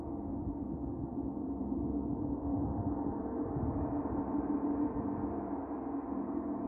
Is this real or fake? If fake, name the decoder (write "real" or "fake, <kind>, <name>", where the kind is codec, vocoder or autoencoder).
fake, vocoder, BigVGAN v2